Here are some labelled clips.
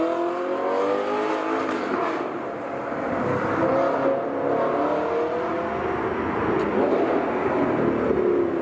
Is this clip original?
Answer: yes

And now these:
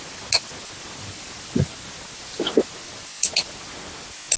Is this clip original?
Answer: yes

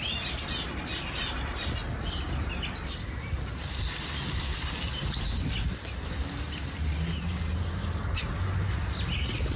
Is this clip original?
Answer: yes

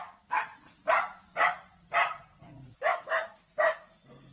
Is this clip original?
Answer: yes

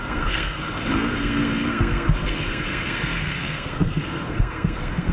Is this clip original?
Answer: no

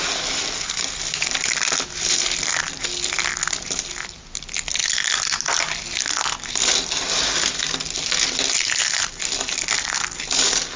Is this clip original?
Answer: yes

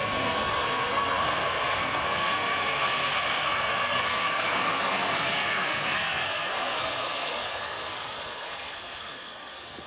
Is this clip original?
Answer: no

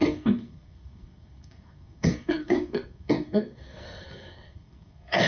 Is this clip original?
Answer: no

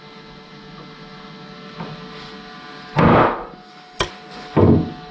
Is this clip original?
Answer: yes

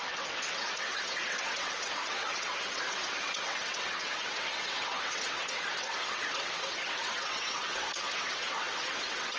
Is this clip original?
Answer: no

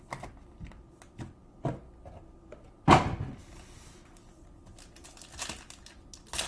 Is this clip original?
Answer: yes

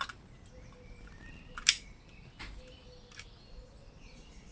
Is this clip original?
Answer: yes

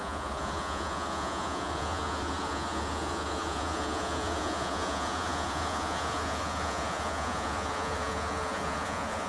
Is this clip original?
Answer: no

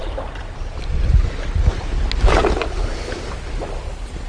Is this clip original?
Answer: yes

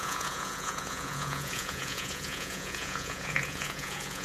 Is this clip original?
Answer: no